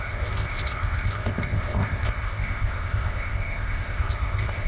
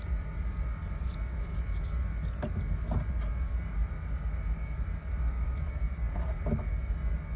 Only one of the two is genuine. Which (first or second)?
second